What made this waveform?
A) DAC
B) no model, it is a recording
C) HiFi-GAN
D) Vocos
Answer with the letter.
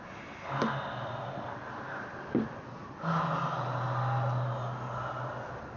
B